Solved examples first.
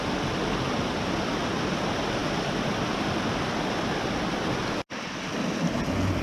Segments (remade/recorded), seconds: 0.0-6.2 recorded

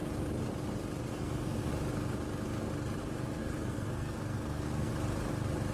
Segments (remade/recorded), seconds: 0.0-1.1 recorded; 1.1-1.7 remade; 1.7-3.4 recorded; 3.4-4.9 remade; 4.9-5.7 recorded